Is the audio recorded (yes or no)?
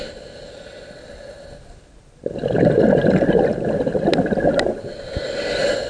yes